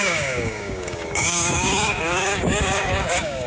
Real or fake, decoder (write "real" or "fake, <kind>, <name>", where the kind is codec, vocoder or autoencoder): fake, codec, DAC